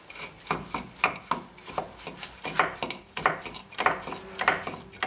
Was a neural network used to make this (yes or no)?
no